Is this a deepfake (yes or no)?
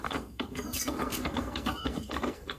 yes